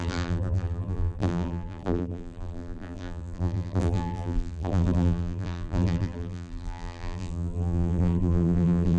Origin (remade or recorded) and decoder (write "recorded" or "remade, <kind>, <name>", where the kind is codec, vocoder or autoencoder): remade, vocoder, BigVGAN v2